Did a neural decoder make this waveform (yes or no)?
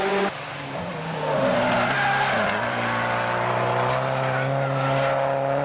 no